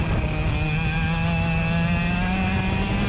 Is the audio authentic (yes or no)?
yes